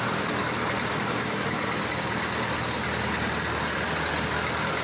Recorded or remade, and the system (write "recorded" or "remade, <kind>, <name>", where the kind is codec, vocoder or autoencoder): recorded